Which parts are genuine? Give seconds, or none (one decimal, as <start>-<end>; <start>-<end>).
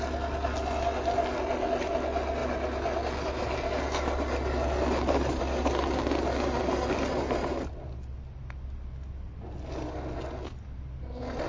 0.0-11.5